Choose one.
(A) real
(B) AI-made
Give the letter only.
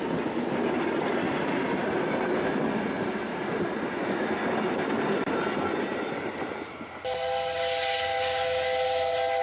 A